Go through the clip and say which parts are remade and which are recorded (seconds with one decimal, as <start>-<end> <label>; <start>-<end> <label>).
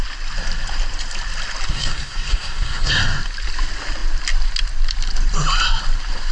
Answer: 0.0-1.7 recorded; 1.7-2.9 remade; 2.9-6.3 recorded